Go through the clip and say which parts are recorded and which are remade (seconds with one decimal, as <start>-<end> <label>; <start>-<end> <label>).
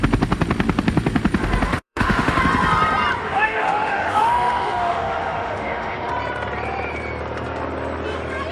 0.0-1.7 recorded; 1.7-2.4 remade; 2.4-3.2 recorded; 3.2-6.1 remade; 6.1-8.5 recorded